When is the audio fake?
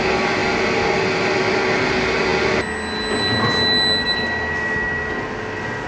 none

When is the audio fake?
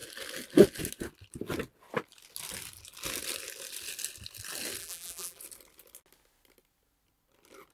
4.8-5.4 (vocoder, BigVGAN v2)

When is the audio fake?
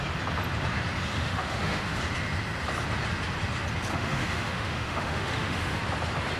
1.1-2.0 (autoencoder, DAC-VAE); 3.9-5.8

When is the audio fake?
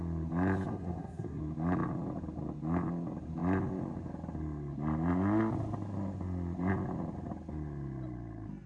0.7-1.4 (codec, SNAC)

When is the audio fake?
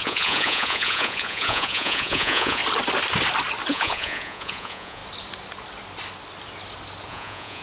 0.0-2.6 (vocoder, Vocos); 3.7-5.0; 7.1-7.6